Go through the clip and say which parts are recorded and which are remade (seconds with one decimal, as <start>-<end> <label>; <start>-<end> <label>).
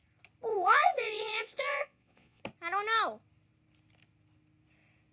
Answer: 0.0-0.5 recorded; 0.5-2.4 remade; 2.4-5.1 recorded